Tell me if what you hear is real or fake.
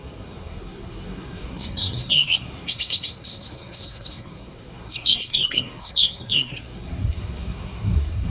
fake